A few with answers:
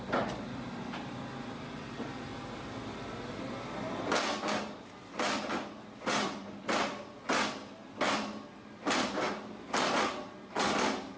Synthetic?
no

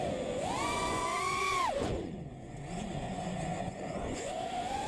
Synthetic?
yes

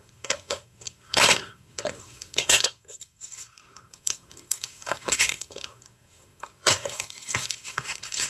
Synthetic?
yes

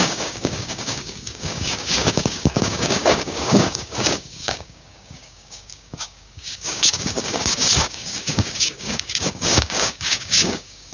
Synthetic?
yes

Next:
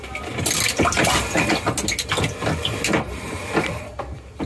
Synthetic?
no